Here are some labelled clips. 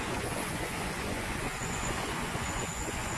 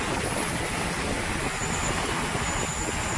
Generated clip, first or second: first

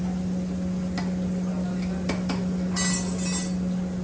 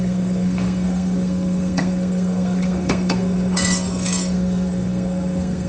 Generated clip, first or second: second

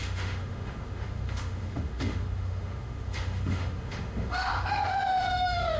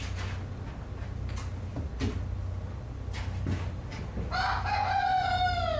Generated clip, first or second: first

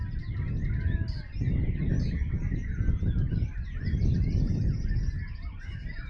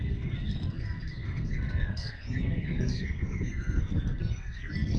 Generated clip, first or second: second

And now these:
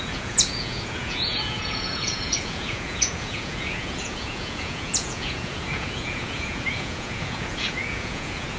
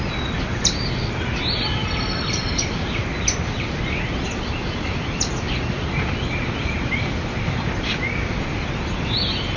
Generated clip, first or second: first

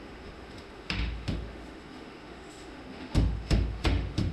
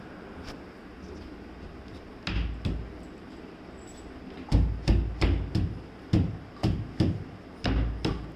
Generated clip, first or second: first